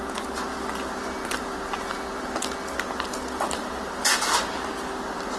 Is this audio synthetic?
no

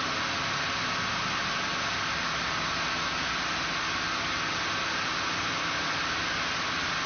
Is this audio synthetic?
no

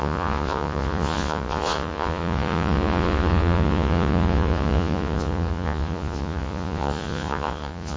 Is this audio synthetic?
yes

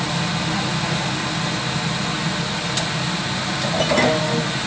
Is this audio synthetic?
no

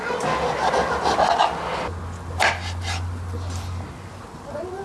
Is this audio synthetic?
no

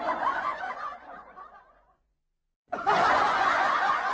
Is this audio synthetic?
yes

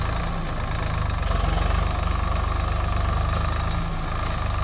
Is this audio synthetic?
no